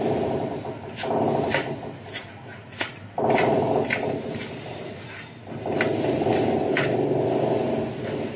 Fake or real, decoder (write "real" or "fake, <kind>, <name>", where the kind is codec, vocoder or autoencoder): real